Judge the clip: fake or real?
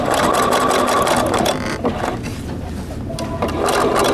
real